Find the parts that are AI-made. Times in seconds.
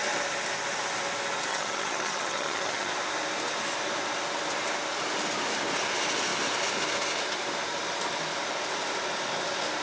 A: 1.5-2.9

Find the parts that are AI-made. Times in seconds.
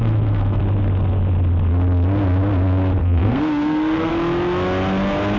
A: 0.0-0.6; 3.0-4.1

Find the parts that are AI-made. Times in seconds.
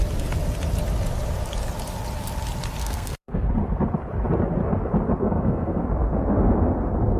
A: 2.8-3.5; 5.2-5.8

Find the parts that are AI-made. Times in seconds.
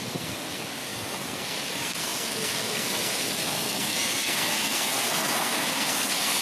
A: 0.0-6.4